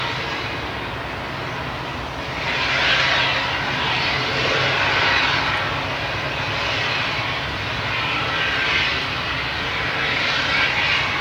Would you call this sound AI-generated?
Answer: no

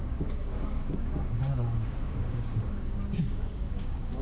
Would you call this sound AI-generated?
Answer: yes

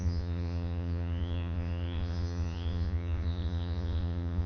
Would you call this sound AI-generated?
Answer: yes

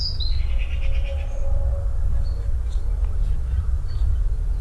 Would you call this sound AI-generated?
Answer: no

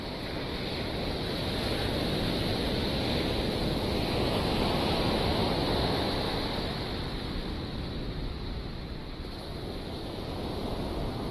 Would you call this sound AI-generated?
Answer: yes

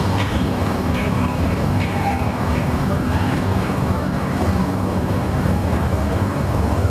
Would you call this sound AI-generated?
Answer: yes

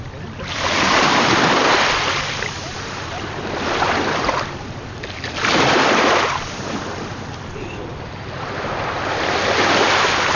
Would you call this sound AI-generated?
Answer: yes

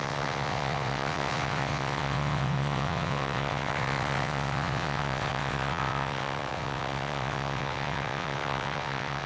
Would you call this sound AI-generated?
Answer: yes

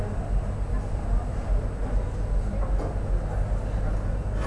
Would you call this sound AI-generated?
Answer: no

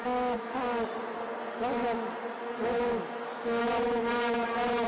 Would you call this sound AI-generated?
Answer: no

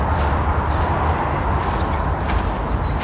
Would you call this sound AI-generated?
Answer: no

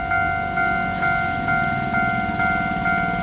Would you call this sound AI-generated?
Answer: no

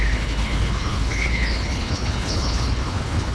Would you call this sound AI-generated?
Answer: yes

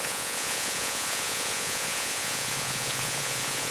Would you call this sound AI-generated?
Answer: yes